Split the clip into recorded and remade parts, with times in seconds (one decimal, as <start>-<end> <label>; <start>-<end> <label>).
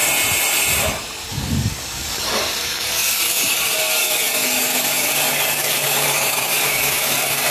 0.0-1.3 recorded; 1.3-7.5 remade